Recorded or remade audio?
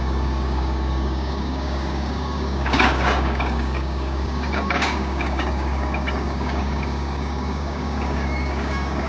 remade